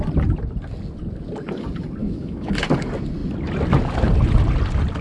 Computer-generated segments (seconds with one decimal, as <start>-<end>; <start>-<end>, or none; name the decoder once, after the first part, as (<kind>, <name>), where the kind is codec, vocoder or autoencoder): 2.0-2.5 (autoencoder, DAC-VAE)